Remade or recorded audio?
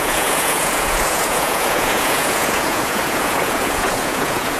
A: remade